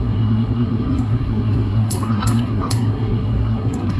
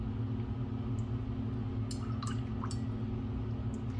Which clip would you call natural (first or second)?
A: second